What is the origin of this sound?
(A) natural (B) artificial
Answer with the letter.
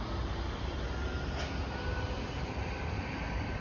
A